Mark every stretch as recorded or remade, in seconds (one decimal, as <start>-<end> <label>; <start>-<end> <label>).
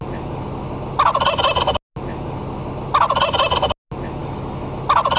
0.0-4.2 recorded; 4.2-4.8 remade; 4.8-5.2 recorded